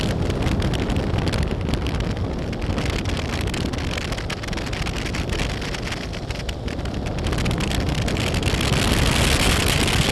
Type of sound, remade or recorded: recorded